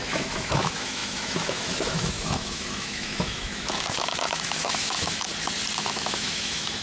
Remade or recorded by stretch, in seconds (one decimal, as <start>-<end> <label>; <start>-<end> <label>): 0.0-5.3 remade; 5.3-5.8 recorded; 5.8-6.8 remade